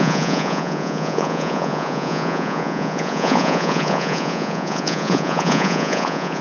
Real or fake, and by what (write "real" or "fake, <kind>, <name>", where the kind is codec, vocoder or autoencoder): fake, vocoder, Vocos